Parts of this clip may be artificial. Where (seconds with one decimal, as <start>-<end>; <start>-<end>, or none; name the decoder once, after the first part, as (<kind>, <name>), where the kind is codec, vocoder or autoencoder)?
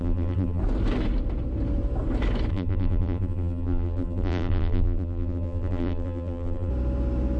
0.0-0.6 (vocoder, BigVGAN v2); 2.5-6.7